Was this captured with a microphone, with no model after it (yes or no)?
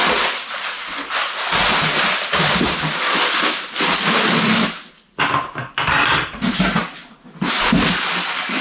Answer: yes